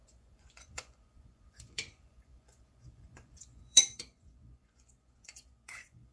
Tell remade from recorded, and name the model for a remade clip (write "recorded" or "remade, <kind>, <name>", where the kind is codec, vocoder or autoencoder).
remade, vocoder, Vocos